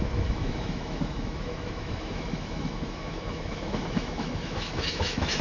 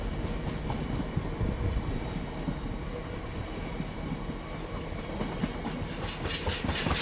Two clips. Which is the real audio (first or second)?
second